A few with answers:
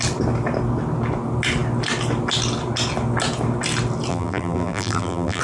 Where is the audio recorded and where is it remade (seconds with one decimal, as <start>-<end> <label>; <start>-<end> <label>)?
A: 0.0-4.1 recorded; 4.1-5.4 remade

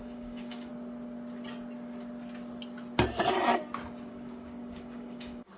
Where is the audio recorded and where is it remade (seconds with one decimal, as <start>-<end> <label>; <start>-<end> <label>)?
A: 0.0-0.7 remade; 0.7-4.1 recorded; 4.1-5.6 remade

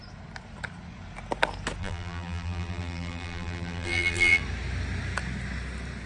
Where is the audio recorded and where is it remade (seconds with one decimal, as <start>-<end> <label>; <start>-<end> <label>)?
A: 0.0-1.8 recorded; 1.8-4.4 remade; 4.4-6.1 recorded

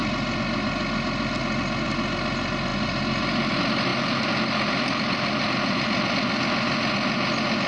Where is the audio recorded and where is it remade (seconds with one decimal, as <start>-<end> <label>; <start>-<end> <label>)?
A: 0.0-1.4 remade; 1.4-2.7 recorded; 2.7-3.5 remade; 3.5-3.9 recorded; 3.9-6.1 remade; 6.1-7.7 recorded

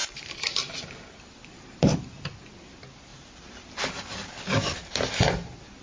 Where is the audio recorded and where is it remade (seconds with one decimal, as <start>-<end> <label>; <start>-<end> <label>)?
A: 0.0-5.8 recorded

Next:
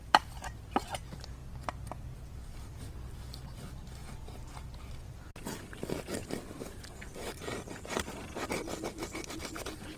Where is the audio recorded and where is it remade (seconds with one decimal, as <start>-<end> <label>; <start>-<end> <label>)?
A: 0.0-1.4 remade; 1.4-2.3 recorded; 2.3-4.0 remade; 4.0-7.3 recorded; 7.3-10.0 remade